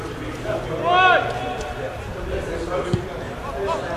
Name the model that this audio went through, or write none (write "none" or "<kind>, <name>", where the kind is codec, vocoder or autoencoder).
none